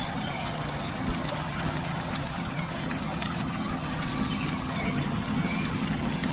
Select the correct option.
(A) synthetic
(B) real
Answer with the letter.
A